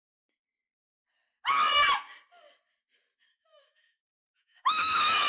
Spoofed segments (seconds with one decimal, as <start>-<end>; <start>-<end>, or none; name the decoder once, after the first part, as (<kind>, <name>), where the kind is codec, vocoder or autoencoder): 3.3-5.3 (autoencoder, DAC-VAE)